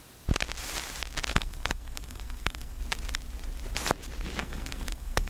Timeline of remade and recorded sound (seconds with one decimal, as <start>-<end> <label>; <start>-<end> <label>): 0.0-1.3 recorded; 1.3-2.8 remade; 2.8-4.4 recorded; 4.4-5.3 remade